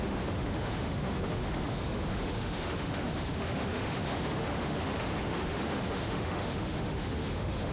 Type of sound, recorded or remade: remade